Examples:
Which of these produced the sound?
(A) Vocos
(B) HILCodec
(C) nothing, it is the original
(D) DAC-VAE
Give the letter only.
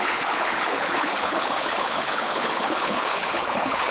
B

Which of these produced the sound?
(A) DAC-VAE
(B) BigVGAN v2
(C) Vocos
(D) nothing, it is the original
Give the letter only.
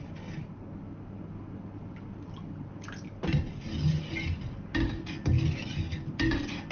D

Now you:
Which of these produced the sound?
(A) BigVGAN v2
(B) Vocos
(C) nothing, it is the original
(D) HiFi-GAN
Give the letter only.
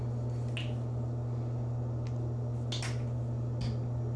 C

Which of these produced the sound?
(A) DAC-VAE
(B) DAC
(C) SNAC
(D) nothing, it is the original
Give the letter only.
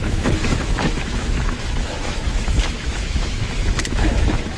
A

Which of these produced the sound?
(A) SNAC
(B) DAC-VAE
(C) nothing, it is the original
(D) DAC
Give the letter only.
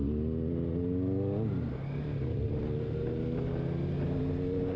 C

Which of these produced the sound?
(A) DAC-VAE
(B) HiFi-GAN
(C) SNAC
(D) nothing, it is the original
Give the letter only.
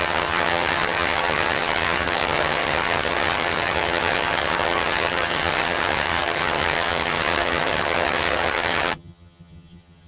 B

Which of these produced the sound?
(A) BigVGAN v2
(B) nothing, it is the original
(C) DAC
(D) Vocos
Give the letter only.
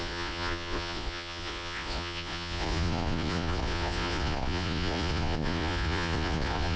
D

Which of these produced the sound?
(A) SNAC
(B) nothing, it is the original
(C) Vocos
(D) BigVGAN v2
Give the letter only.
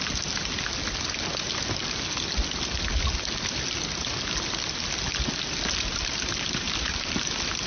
B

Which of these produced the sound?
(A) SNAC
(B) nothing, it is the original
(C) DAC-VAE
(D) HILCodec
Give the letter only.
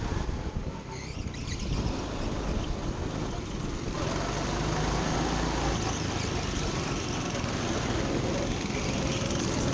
B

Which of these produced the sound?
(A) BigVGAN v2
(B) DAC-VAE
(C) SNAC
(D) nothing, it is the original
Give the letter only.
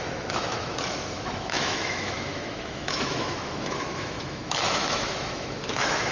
B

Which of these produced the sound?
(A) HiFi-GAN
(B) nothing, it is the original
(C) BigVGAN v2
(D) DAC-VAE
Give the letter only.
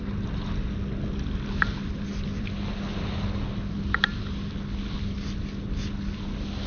B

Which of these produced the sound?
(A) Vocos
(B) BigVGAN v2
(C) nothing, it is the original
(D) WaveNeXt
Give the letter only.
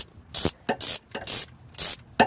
C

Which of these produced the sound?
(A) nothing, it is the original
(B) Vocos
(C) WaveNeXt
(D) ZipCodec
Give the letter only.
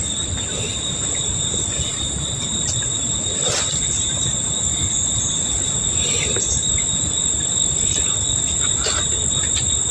A